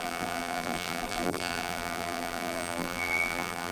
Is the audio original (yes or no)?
no